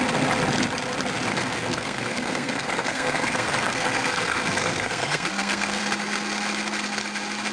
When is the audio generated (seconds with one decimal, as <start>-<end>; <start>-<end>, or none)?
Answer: 1.3-5.8